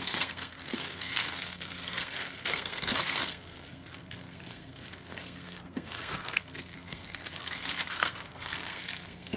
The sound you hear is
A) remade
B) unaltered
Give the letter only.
A